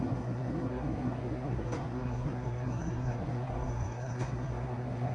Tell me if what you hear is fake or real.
fake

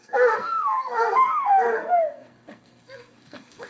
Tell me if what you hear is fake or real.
fake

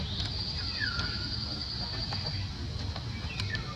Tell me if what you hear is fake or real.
real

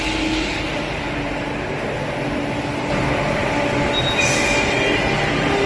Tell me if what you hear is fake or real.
real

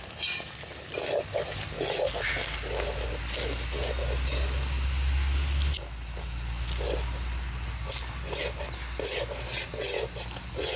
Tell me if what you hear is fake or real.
real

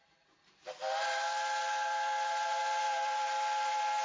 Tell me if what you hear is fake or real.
real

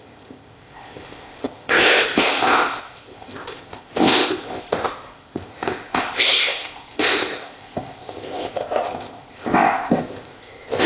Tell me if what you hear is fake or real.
fake